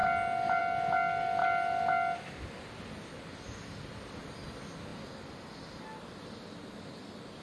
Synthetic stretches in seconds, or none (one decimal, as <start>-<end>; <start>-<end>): none